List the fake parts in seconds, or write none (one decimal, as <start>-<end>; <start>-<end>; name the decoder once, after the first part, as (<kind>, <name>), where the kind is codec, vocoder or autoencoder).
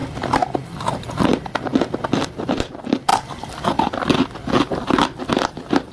0.0-2.7 (vocoder, BigVGAN v2); 3.1-3.8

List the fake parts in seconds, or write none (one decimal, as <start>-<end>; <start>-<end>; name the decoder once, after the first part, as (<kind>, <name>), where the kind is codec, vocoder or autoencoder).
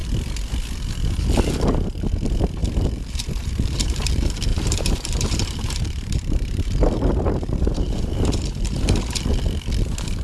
2.6-4.1 (vocoder, BigVGAN v2); 4.5-9.2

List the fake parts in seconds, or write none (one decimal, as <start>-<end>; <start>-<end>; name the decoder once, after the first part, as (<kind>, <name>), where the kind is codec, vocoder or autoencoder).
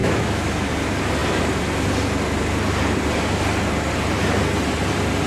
0.0-0.7 (autoencoder, DAC-VAE)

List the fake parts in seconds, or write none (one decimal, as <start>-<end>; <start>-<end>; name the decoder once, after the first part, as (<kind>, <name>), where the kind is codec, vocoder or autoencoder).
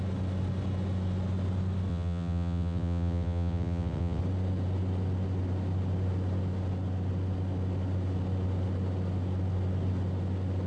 1.9-4.2 (vocoder, WaveNeXt)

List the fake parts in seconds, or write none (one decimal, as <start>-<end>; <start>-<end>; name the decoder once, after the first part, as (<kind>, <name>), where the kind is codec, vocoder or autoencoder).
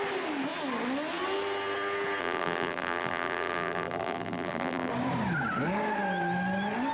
2.2-4.9 (vocoder, BigVGAN v2)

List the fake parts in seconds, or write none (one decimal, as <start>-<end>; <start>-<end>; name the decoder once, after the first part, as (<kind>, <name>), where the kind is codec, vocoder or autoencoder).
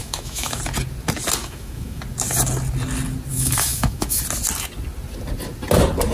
0.0-0.6 (autoencoder, DAC-VAE); 1.4-2.0; 3.3-4.2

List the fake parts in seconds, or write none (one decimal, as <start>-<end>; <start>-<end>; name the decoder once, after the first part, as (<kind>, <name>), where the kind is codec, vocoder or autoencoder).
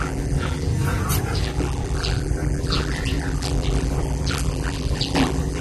0.0-0.7 (vocoder, BigVGAN v2); 1.4-5.6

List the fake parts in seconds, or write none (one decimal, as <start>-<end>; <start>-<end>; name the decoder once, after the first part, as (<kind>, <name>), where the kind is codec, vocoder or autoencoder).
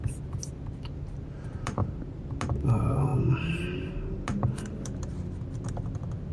none